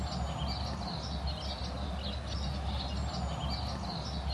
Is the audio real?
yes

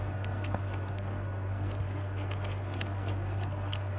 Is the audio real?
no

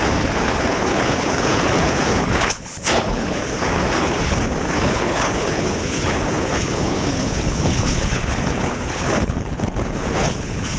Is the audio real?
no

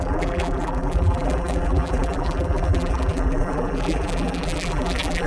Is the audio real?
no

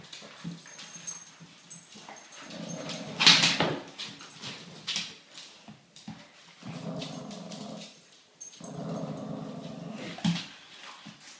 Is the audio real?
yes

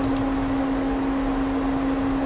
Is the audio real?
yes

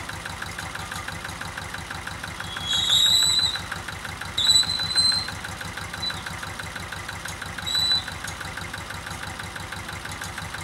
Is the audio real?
yes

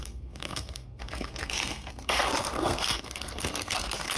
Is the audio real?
no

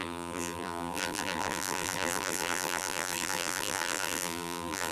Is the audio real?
no